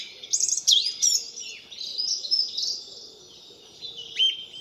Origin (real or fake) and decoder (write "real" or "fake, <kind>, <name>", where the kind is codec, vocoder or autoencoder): real